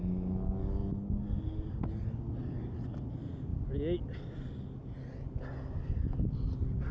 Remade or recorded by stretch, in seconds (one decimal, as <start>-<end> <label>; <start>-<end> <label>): 0.0-6.9 recorded